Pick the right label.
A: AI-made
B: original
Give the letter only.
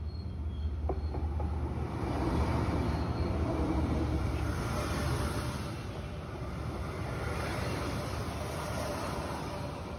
B